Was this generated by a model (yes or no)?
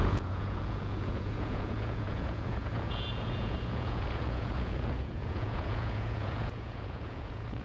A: yes